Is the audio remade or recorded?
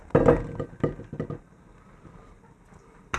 recorded